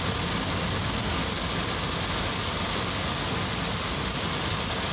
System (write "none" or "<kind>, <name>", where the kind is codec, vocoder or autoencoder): none